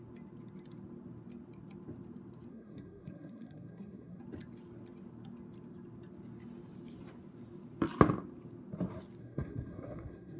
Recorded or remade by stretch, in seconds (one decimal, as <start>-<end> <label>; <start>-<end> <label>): 0.0-2.5 recorded; 2.5-4.2 remade; 4.2-9.2 recorded; 9.2-10.4 remade